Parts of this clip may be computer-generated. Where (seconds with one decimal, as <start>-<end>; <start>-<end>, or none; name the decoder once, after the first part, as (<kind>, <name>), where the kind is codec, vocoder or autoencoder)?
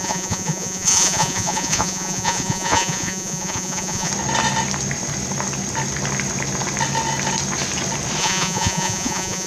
0.0-4.1 (vocoder, Vocos); 8.2-9.5